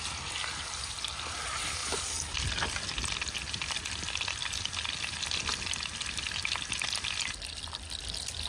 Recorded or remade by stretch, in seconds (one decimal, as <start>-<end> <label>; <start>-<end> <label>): 0.0-8.5 recorded